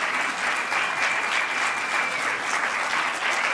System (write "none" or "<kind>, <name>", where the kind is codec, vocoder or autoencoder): none